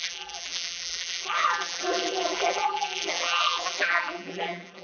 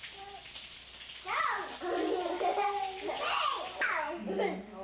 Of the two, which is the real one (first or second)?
second